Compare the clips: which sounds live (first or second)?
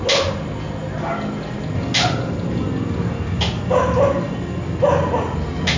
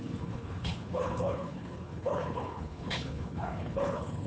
first